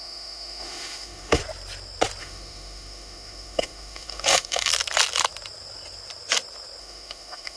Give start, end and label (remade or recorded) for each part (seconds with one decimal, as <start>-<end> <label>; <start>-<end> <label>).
0.0-1.4 remade; 1.4-2.2 recorded; 2.2-4.7 remade; 4.7-6.8 recorded; 6.8-7.6 remade

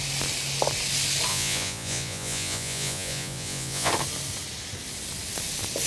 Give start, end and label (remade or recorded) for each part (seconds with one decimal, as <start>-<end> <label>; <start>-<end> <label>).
0.0-1.3 recorded; 1.3-3.9 remade; 3.9-5.9 recorded

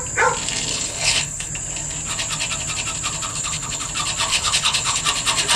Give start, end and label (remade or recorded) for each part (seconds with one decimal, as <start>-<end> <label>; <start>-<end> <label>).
0.0-0.7 recorded; 0.7-1.5 remade; 1.5-3.3 recorded; 3.3-3.9 remade; 3.9-4.3 recorded; 4.3-5.0 remade; 5.0-5.6 recorded

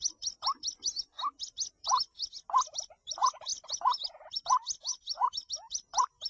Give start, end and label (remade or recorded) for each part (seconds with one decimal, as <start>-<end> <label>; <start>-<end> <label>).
0.0-3.5 recorded; 3.5-4.4 remade; 4.4-4.9 recorded; 4.9-5.5 remade; 5.5-6.3 recorded

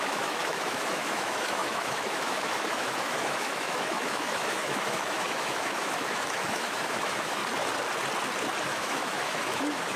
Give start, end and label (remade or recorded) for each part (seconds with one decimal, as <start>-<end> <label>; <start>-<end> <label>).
0.0-7.4 remade; 7.4-8.6 recorded; 8.6-10.0 remade

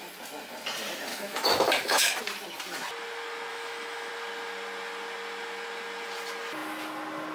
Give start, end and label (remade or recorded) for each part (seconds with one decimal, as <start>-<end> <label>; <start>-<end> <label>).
0.0-1.1 recorded; 1.1-2.2 remade; 2.2-3.5 recorded; 3.5-4.1 remade; 4.1-7.3 recorded